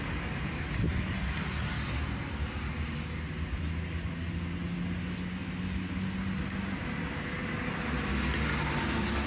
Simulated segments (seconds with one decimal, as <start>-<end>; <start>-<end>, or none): none